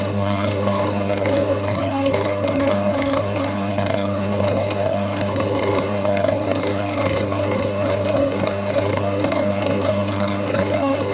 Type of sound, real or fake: fake